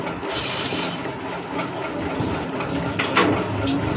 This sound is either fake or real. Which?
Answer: real